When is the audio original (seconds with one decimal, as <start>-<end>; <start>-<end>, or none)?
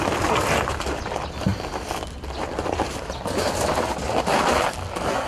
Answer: 0.0-5.3